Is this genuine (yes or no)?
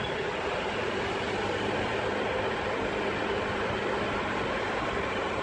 no